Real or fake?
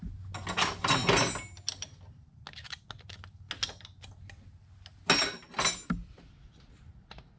real